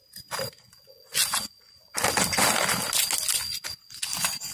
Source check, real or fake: real